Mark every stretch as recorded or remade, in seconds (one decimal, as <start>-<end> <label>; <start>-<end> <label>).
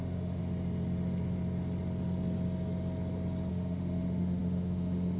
0.0-0.4 remade; 0.4-3.5 recorded; 3.5-5.2 remade